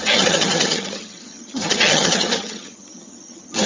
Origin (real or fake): fake